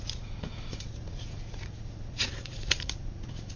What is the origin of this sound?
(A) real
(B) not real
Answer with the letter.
B